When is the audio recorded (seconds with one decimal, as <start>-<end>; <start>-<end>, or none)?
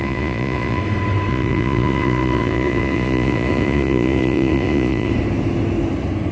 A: 0.8-1.3; 5.1-6.3